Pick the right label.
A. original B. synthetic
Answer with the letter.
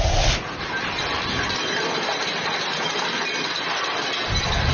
A